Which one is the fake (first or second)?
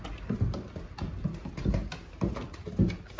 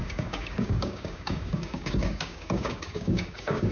second